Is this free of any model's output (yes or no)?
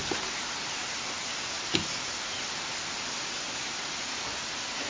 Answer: yes